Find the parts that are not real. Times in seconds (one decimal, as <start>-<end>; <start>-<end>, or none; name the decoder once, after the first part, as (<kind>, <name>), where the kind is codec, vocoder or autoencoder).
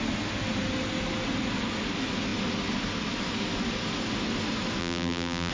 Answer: 4.8-5.5 (vocoder, BigVGAN v2)